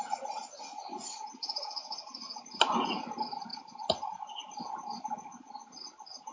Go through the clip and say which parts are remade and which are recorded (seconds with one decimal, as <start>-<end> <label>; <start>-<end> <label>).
0.0-2.4 remade; 2.4-6.3 recorded

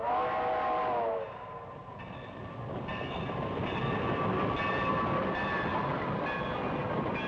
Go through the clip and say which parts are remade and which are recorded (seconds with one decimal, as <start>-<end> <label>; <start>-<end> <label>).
0.0-7.3 recorded

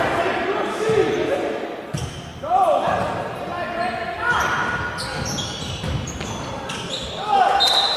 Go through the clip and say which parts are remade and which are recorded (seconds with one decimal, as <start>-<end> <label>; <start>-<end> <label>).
0.0-8.0 recorded

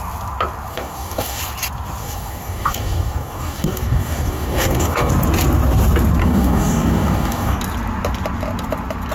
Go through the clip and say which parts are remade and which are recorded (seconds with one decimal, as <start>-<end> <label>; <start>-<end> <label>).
0.0-0.7 recorded; 0.7-1.4 remade; 1.4-2.0 recorded; 2.0-5.1 remade; 5.1-6.2 recorded; 6.2-7.6 remade; 7.6-9.1 recorded